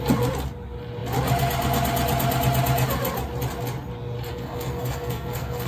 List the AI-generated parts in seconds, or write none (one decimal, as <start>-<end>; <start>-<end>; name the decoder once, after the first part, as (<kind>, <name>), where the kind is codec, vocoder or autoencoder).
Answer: 4.3-5.7 (codec, SNAC)